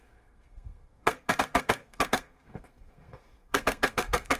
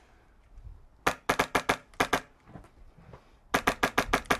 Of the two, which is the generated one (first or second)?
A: first